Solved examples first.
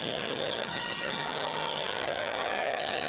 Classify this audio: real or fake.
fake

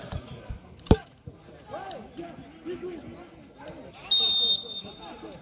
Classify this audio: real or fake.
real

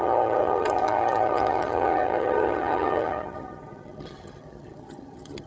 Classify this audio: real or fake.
fake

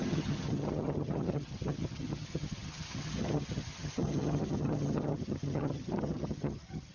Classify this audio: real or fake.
fake